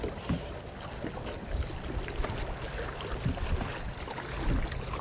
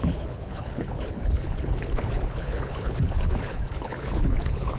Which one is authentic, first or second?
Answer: first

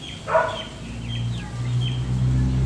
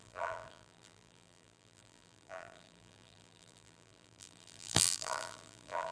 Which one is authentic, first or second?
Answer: first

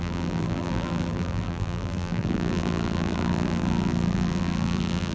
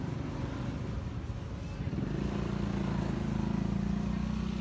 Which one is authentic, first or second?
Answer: second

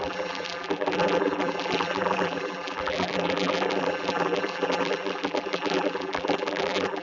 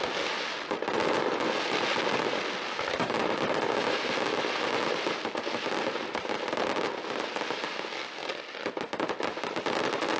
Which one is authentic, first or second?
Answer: second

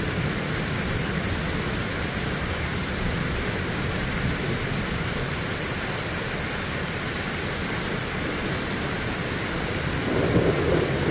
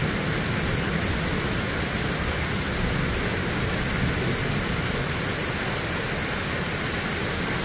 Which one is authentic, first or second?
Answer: second